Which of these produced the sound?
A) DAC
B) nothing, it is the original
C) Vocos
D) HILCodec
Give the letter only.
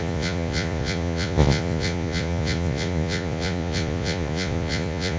C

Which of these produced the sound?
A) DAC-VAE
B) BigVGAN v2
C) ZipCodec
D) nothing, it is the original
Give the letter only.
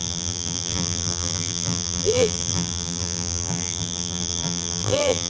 B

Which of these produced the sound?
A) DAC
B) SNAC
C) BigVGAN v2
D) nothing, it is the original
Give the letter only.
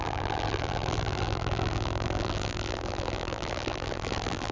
C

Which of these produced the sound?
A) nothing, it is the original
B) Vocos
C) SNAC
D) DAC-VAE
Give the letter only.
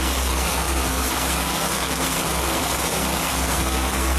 C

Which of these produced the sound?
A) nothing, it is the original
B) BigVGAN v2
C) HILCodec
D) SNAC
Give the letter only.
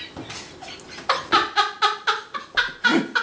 A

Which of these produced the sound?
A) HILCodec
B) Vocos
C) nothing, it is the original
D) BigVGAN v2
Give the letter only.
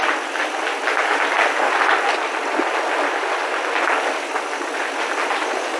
C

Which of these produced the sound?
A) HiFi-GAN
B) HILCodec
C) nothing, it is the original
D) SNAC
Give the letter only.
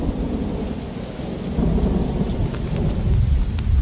C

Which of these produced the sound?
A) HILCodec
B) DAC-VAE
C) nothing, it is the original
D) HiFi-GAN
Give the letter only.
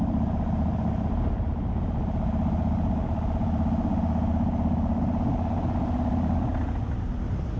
C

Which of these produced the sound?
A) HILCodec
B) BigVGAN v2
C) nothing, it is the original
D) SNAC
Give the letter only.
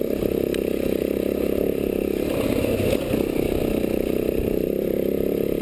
C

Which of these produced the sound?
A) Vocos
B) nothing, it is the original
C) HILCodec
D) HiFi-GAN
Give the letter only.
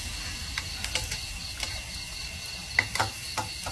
B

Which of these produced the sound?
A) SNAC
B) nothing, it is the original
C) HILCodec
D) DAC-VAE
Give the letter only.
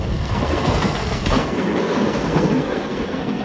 A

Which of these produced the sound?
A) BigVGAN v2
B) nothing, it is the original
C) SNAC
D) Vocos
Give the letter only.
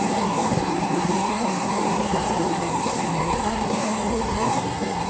C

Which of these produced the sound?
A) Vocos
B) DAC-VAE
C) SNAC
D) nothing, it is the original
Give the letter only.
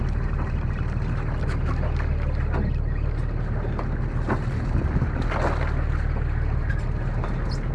D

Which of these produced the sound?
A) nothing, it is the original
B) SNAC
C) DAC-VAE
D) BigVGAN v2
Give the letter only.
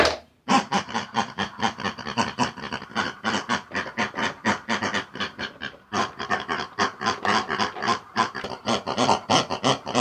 D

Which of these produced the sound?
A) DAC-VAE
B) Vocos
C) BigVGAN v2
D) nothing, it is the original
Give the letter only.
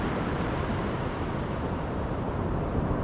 C